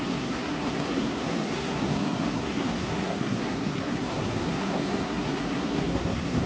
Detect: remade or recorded remade